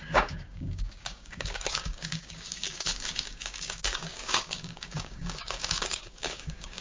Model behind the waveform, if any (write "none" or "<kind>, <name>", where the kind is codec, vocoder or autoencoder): codec, DAC